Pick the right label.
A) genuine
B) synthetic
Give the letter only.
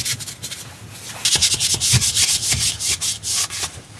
A